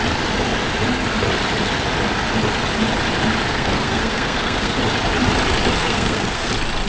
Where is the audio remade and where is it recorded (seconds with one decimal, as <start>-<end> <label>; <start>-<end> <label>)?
0.0-3.5 recorded; 3.5-4.8 remade; 4.8-5.8 recorded; 5.8-6.5 remade; 6.5-6.9 recorded